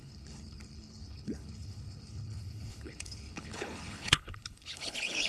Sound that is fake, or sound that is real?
fake